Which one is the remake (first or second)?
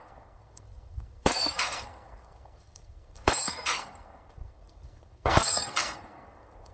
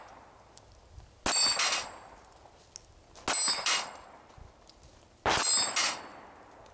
first